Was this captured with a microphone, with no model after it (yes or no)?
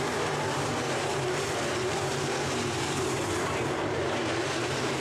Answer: no